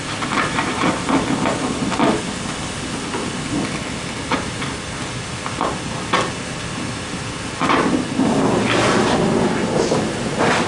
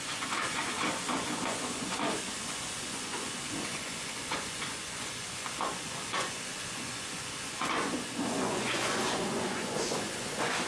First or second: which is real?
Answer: first